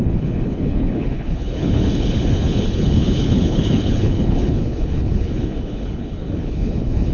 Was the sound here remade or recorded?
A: remade